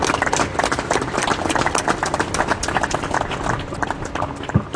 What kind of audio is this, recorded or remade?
recorded